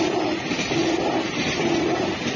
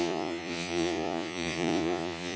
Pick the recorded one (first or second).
first